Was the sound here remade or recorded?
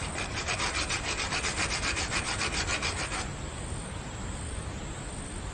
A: recorded